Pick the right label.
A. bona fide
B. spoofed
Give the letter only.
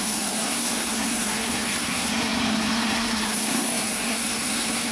B